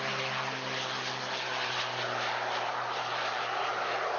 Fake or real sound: real